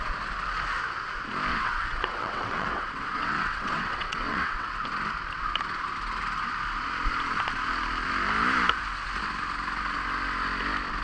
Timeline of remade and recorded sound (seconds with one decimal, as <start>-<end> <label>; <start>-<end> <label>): 0.0-1.5 recorded; 1.5-4.7 remade; 4.7-11.0 recorded